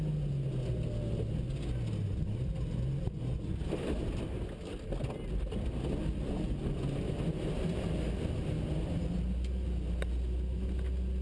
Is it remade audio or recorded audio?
recorded